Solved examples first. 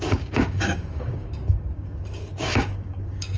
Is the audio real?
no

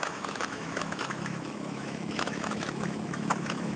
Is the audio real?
no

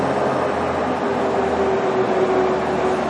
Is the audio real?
yes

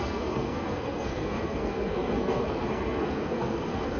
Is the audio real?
no